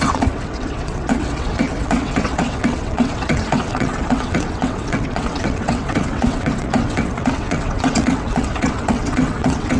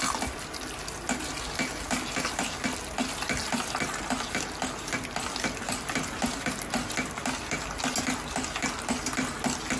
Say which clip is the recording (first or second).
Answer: second